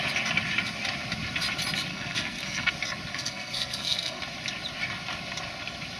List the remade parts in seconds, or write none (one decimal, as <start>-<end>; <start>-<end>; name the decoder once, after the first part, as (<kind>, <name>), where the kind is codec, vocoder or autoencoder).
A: 1.9-2.7 (codec, SNAC); 3.1-4.2